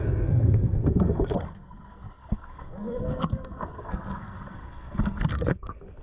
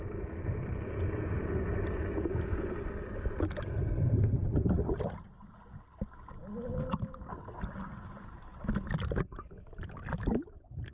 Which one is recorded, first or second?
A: second